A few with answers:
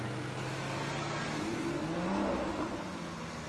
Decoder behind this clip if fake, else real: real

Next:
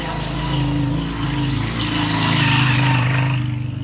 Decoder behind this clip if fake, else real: real